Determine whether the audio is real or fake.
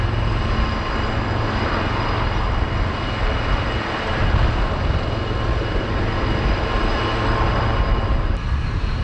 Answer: real